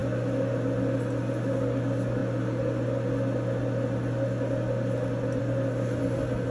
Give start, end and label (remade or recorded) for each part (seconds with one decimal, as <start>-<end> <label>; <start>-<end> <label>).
0.0-6.5 recorded